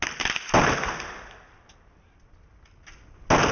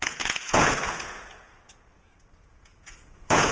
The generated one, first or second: second